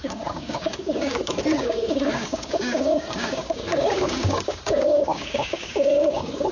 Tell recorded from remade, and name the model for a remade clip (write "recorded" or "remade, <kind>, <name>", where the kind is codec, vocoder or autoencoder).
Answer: remade, codec, DAC